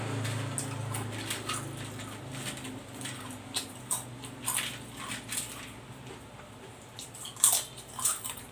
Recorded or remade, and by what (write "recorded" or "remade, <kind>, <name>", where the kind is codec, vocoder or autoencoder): recorded